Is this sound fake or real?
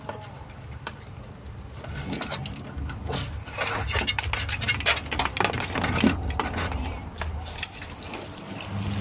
real